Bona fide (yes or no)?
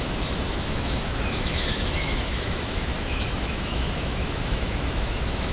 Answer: no